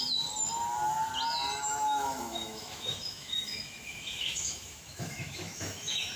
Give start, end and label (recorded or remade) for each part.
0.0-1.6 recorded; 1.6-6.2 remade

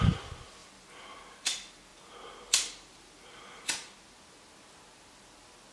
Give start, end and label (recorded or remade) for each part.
0.0-5.7 recorded

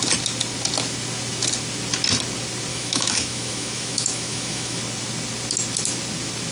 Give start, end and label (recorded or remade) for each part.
0.0-2.7 recorded; 2.7-4.8 remade; 4.8-6.5 recorded

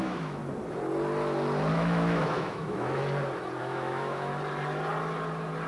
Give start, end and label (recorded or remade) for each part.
0.0-0.4 remade; 0.4-1.7 recorded; 1.7-3.0 remade; 3.0-3.6 recorded; 3.6-4.3 remade; 4.3-5.7 recorded